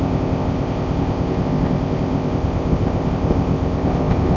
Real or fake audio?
fake